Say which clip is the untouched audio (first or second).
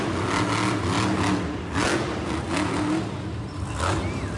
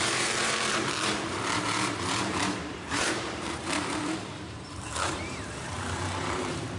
first